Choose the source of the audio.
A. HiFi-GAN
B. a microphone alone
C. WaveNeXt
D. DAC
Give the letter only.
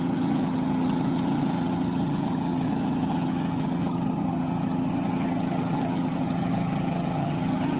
A